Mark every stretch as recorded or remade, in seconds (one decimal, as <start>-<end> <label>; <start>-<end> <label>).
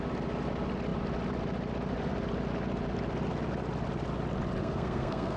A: 0.0-4.6 recorded; 4.6-5.4 remade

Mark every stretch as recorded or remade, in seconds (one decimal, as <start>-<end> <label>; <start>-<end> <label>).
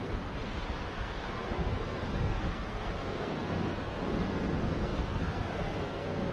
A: 0.0-6.3 remade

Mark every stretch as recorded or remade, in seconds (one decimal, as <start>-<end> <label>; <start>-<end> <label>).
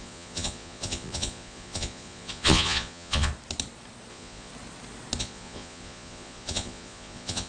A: 0.0-3.3 remade; 3.3-4.1 recorded; 4.1-4.5 remade; 4.5-5.2 recorded; 5.2-7.5 remade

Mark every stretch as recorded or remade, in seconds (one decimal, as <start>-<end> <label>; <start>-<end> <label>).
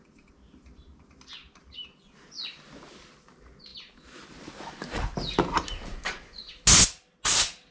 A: 0.0-6.0 recorded; 6.0-6.5 remade; 6.5-7.7 recorded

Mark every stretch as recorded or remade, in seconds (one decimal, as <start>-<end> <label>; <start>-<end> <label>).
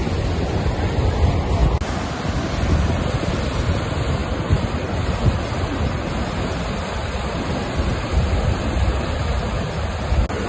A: 0.0-10.5 recorded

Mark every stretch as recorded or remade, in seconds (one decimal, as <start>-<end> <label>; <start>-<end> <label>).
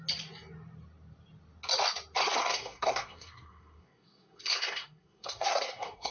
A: 0.0-2.2 recorded; 2.2-6.1 remade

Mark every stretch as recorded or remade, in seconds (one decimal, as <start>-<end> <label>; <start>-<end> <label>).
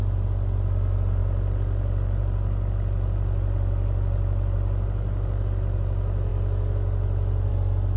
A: 0.0-8.0 recorded